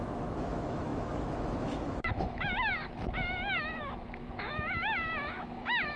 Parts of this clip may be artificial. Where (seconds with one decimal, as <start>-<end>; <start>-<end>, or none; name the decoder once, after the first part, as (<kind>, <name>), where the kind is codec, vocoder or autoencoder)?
0.0-6.0 (autoencoder, DAC-VAE)